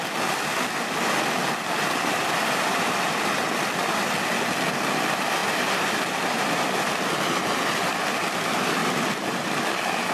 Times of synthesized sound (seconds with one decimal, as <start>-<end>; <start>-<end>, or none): 2.0-3.4; 5.4-7.1